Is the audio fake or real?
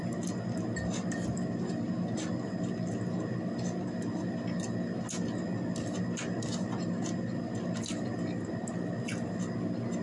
real